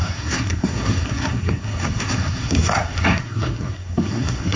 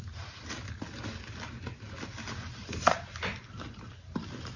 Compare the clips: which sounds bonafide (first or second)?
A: second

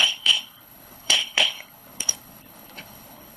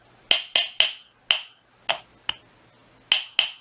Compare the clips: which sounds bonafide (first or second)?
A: second